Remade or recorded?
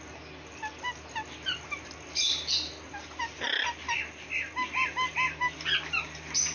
recorded